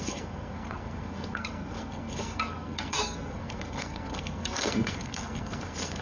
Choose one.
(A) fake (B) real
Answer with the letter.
A